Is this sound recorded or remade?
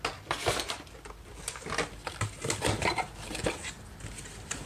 recorded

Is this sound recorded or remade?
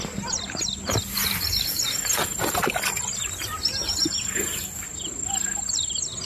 recorded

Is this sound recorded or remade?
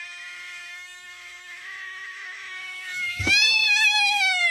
remade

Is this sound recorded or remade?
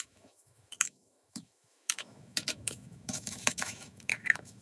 remade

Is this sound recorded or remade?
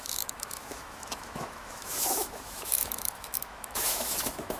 remade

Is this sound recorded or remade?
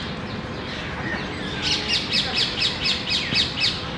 recorded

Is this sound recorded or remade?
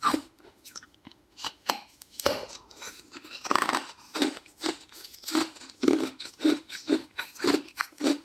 remade